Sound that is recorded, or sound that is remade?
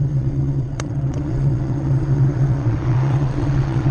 remade